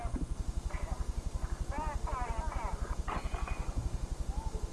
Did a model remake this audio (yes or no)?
no